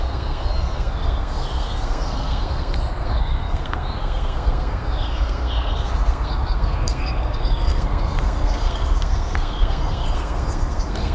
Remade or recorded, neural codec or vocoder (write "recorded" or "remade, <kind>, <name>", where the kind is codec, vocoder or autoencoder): remade, codec, SNAC